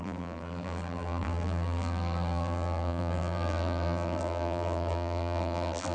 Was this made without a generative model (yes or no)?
no